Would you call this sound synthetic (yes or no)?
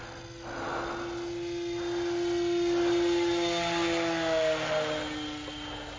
no